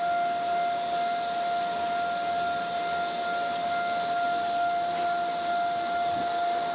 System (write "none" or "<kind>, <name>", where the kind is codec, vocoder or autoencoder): none